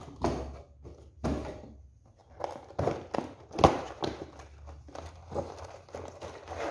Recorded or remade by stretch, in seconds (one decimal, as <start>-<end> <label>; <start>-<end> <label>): 0.0-6.7 recorded

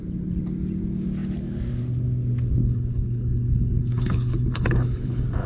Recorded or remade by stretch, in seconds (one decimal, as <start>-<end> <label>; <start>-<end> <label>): 0.0-2.6 recorded; 2.6-5.5 remade

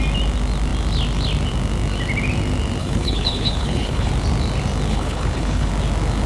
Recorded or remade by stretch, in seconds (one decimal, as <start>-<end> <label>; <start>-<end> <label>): 0.0-2.8 recorded; 2.8-4.1 remade; 4.1-4.9 recorded; 4.9-5.7 remade; 5.7-6.3 recorded

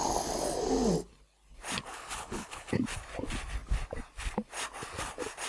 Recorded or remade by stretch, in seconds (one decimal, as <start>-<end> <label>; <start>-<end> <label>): 0.0-1.8 recorded; 1.8-2.7 remade; 2.7-5.5 recorded